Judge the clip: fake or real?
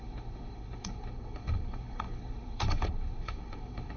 fake